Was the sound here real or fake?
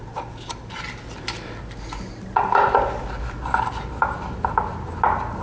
real